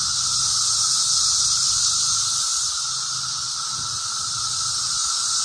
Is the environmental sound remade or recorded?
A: recorded